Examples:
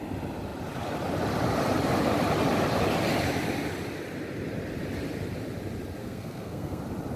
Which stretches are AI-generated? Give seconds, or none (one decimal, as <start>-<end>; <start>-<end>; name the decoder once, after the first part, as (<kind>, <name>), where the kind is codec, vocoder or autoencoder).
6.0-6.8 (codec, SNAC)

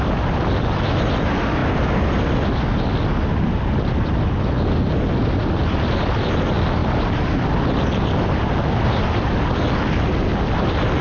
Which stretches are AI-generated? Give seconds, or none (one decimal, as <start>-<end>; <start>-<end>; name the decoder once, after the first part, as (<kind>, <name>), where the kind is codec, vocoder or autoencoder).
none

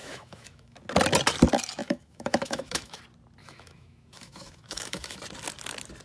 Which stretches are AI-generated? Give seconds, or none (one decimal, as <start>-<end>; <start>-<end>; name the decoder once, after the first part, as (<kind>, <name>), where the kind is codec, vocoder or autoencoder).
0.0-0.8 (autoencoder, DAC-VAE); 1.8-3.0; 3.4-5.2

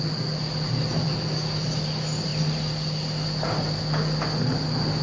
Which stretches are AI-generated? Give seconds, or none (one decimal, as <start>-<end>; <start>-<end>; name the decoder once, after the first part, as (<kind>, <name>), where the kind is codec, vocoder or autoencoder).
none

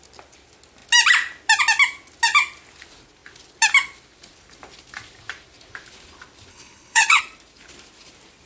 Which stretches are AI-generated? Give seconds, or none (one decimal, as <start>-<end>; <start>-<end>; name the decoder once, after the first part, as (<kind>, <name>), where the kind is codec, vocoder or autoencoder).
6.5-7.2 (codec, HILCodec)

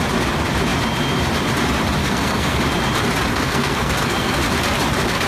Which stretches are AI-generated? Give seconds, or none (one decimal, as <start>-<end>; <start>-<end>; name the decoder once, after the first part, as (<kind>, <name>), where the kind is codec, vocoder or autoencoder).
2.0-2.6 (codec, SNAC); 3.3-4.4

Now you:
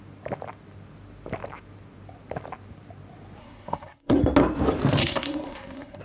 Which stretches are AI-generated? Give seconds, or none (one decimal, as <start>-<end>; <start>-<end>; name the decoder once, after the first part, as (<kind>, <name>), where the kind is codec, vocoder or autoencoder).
3.4-4.2 (codec, SNAC); 5.0-6.0